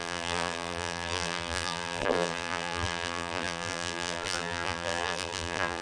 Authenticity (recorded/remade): remade